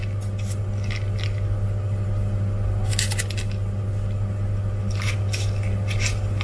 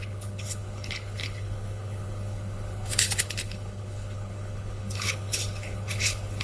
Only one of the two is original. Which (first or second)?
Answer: first